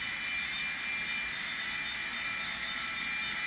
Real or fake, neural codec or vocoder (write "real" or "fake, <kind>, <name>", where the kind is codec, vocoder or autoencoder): real